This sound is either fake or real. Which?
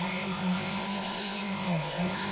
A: fake